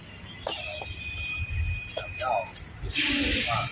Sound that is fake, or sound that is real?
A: real